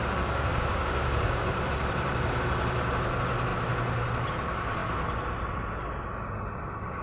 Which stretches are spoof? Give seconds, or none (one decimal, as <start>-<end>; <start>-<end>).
0.0-1.5